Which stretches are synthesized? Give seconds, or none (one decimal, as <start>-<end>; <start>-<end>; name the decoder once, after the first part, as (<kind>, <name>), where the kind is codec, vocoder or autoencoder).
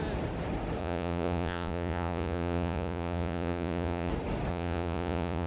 0.8-4.1 (vocoder, Vocos); 4.5-5.5